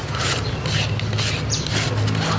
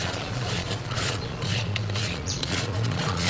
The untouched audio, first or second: first